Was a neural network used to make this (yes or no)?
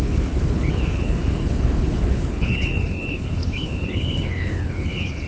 yes